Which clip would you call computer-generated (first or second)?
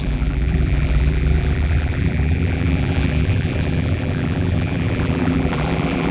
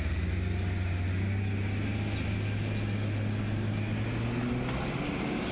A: first